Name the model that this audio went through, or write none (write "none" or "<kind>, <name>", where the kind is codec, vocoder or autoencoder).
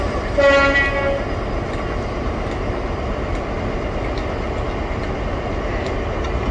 none